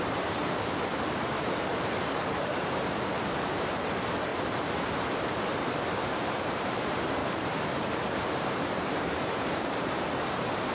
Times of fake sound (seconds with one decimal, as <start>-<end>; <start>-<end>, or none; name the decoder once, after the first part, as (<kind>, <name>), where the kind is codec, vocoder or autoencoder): 0.0-0.4 (vocoder, BigVGAN v2); 1.7-4.3; 5.2-7.2; 8.1-10.7